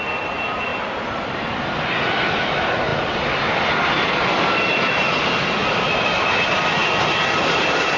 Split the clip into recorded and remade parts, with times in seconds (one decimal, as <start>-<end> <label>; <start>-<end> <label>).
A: 0.0-8.0 recorded